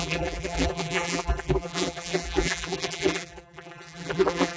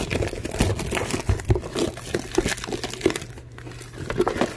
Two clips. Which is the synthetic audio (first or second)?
first